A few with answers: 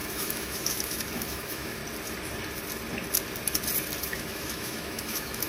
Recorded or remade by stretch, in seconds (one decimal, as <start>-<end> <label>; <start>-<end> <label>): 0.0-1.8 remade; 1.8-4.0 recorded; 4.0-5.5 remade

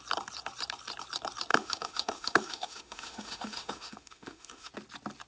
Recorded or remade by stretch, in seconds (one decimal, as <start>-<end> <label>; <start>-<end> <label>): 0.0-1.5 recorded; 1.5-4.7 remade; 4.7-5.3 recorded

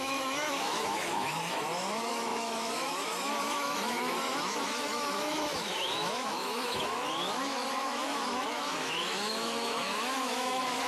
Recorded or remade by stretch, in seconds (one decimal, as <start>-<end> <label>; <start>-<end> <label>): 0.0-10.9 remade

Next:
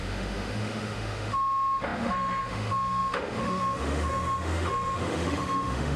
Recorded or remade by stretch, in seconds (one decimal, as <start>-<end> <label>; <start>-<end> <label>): 0.0-6.0 remade

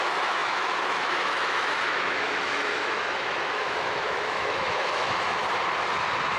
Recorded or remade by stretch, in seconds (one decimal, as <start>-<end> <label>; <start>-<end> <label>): 0.0-5.4 remade; 5.4-6.4 recorded